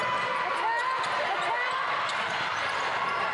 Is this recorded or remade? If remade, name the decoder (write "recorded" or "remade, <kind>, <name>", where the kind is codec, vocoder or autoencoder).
recorded